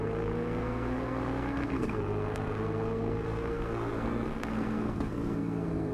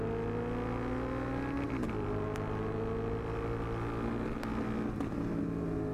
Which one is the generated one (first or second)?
first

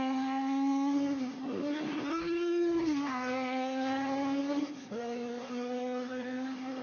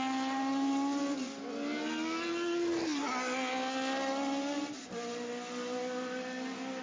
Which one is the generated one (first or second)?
first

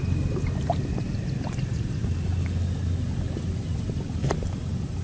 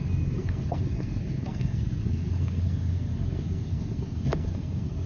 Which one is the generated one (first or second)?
second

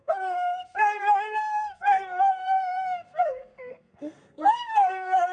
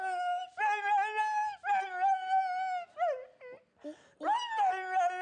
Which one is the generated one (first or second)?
first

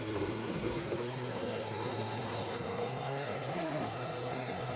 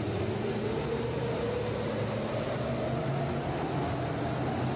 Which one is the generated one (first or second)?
first